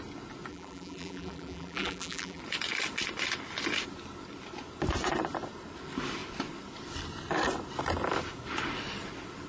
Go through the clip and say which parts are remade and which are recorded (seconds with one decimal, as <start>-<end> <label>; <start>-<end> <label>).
0.0-0.5 recorded; 0.5-2.4 remade; 2.4-9.5 recorded

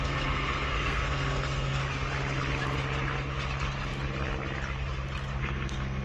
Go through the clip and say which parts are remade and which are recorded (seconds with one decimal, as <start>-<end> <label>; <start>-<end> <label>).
0.0-1.8 remade; 1.8-5.4 recorded; 5.4-6.0 remade

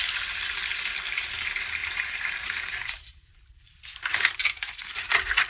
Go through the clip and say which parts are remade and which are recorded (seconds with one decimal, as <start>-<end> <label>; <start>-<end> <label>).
0.0-1.8 recorded; 1.8-3.8 remade; 3.8-5.5 recorded